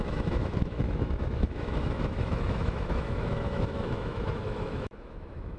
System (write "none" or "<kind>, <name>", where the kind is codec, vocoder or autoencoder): autoencoder, DAC-VAE